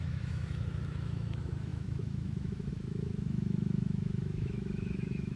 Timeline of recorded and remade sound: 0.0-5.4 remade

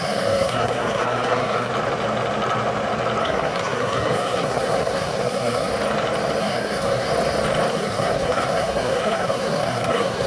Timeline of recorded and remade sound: 0.0-1.7 remade; 1.7-3.2 recorded; 3.2-5.7 remade; 5.7-6.4 recorded; 6.4-7.1 remade; 7.1-7.7 recorded; 7.7-10.3 remade

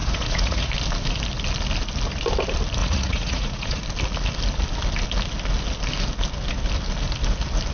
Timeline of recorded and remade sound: 0.0-0.7 remade; 0.7-2.8 recorded; 2.8-3.8 remade; 3.8-7.7 recorded